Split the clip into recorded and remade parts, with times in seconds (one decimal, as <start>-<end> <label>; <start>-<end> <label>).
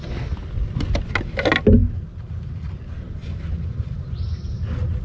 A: 0.0-5.0 recorded